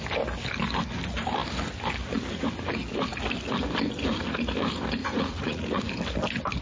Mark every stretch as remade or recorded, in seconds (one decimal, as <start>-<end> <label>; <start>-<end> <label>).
0.0-5.0 recorded; 5.0-5.8 remade; 5.8-6.6 recorded